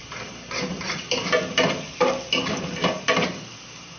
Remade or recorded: recorded